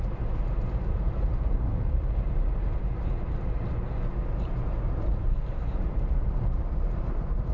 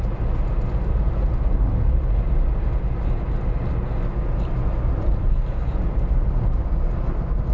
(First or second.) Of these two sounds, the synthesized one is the first